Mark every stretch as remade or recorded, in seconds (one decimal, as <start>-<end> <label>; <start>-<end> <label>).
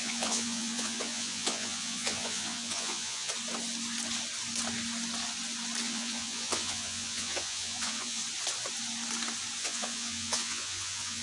0.0-3.3 remade; 3.3-5.8 recorded; 5.8-8.2 remade; 8.2-9.6 recorded; 9.6-11.2 remade